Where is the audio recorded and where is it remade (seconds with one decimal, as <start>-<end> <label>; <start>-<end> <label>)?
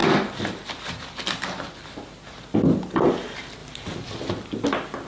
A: 0.0-5.1 recorded